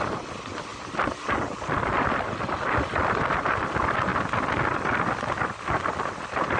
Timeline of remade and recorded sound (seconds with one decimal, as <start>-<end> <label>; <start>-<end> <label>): 0.0-6.6 recorded